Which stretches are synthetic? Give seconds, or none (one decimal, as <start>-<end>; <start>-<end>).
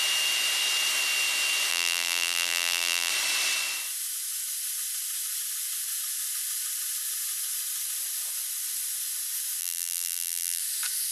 1.7-3.1; 9.6-10.6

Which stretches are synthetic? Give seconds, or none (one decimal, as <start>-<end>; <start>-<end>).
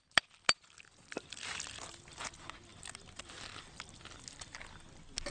none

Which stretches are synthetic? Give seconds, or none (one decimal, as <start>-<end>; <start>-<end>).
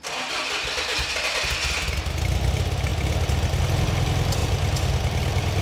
none